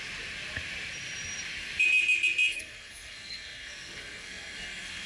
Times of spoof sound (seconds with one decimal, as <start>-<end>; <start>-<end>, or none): 2.5-5.1